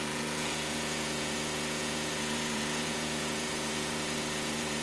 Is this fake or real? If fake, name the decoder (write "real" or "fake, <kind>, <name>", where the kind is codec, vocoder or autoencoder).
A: fake, vocoder, Vocos